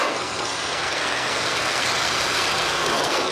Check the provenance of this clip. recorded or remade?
remade